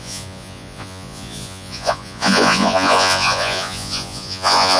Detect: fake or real fake